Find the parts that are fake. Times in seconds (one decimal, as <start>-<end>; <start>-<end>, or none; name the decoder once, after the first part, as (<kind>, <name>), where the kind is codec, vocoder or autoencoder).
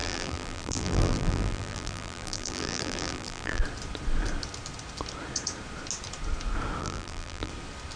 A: 0.0-3.6 (vocoder, BigVGAN v2); 6.8-7.5